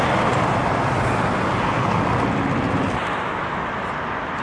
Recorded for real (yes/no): yes